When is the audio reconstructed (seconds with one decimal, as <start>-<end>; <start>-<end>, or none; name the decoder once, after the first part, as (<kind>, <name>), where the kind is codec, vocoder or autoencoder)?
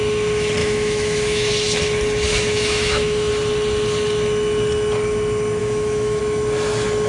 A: 0.6-1.5 (autoencoder, DAC-VAE); 2.3-3.3; 5.6-6.2